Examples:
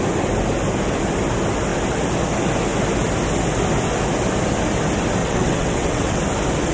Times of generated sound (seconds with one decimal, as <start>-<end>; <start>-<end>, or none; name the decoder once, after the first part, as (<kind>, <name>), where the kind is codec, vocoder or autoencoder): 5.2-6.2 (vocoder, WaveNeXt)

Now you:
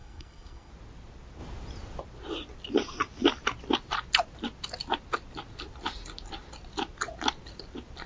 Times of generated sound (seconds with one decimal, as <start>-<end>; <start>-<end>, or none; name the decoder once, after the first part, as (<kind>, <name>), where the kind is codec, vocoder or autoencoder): 0.0-0.7 (codec, SNAC)

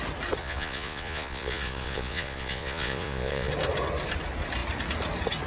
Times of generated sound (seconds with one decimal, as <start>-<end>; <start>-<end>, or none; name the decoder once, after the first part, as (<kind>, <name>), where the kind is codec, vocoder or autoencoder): 0.4-3.5 (vocoder, Vocos)

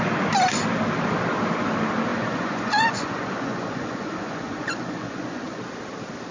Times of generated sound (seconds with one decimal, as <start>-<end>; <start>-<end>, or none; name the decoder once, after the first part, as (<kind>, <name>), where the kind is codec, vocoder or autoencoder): 2.1-5.6 (vocoder, Vocos)

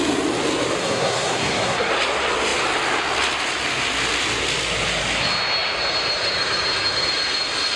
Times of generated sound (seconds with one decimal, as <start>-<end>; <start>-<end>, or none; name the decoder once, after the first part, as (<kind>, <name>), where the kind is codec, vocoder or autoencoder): 0.8-1.9 (codec, SNAC)